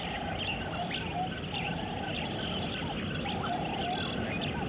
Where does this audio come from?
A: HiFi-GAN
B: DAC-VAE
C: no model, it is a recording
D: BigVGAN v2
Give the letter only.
C